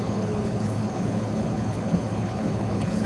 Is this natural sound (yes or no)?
no